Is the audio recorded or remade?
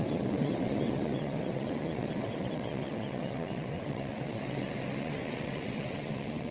remade